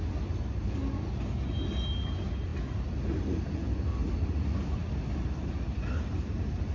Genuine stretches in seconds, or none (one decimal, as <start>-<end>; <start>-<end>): 0.0-6.7